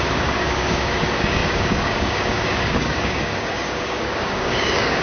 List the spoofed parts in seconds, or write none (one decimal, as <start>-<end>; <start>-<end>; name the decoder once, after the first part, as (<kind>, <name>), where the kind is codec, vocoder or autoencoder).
0.0-5.0 (codec, DAC)